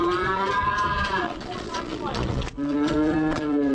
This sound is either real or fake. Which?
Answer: fake